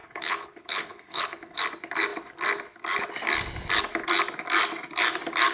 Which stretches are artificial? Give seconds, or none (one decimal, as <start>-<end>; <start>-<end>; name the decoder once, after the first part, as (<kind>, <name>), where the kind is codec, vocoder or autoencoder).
0.0-1.6 (codec, HILCodec)